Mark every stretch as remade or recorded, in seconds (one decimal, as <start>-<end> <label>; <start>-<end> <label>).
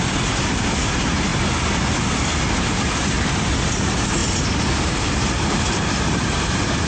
0.0-1.3 remade; 1.3-3.7 recorded; 3.7-6.9 remade